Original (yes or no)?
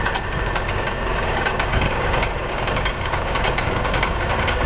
no